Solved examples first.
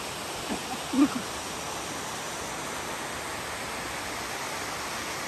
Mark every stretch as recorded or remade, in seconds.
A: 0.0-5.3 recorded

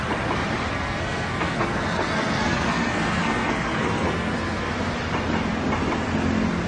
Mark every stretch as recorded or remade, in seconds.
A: 0.0-0.7 recorded; 0.7-4.7 remade; 4.7-6.7 recorded

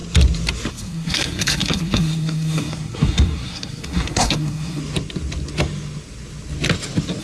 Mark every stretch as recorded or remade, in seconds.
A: 0.0-0.7 recorded; 0.7-4.8 remade; 4.8-7.2 recorded

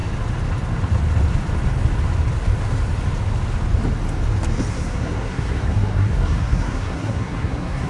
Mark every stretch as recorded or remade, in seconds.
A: 0.0-4.7 recorded; 4.7-7.9 remade

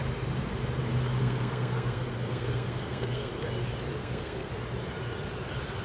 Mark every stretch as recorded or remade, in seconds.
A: 0.0-1.2 recorded; 1.2-3.3 remade; 3.3-4.0 recorded; 4.0-4.5 remade; 4.5-5.8 recorded

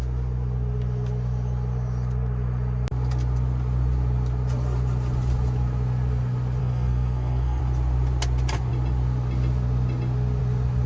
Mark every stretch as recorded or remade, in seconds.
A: 0.0-6.6 recorded; 6.6-7.6 remade; 7.6-10.9 recorded

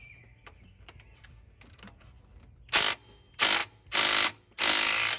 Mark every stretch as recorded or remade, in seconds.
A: 0.0-5.2 recorded

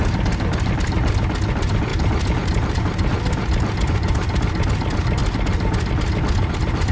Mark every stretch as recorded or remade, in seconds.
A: 0.0-6.9 recorded